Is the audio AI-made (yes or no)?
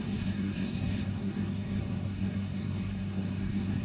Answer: yes